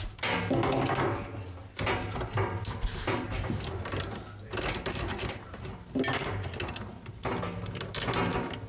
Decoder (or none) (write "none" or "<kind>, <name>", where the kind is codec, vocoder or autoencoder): none